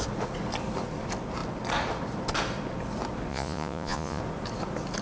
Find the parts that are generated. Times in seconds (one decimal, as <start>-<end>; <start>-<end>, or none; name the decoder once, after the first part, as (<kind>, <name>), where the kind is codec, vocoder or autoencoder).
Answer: 3.3-4.2 (vocoder, Vocos)